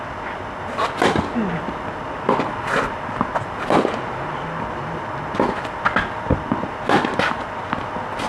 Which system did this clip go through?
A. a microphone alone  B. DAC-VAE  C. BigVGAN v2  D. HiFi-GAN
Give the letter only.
A